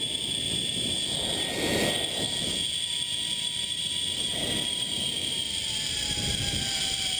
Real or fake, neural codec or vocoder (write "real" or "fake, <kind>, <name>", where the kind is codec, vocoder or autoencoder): fake, vocoder, BigVGAN v2